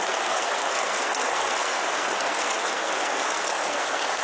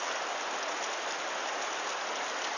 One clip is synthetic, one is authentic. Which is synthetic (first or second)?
first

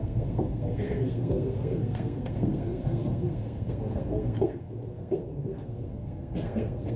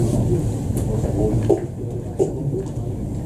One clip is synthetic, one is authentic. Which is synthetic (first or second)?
first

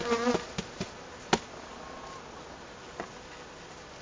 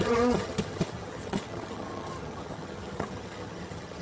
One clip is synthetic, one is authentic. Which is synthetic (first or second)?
second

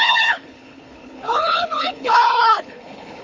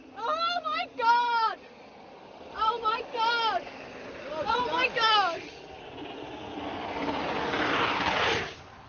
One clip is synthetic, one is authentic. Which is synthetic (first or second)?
first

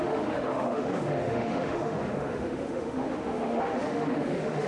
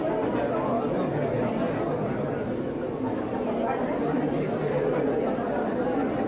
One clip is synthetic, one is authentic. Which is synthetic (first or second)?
first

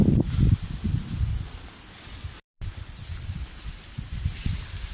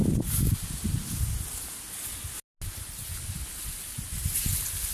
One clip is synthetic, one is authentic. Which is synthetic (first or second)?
first